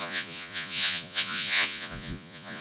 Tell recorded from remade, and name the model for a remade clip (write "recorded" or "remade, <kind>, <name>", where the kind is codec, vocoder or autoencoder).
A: remade, vocoder, Vocos